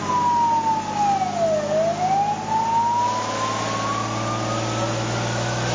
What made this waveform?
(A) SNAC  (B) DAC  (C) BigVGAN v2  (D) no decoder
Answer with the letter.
D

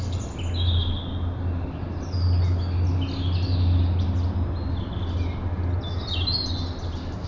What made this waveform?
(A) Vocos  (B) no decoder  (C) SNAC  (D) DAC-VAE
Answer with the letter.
B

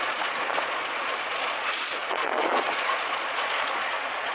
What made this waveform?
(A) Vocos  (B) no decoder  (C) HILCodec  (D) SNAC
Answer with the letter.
A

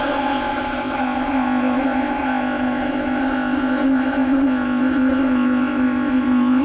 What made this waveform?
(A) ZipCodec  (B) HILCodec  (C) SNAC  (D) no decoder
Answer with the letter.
A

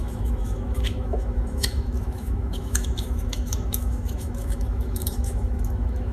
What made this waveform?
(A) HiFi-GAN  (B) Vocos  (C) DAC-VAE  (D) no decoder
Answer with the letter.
C